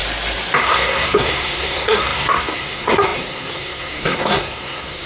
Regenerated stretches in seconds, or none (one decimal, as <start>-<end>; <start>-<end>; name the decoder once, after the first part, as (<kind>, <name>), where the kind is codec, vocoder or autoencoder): 0.6-5.1 (codec, SNAC)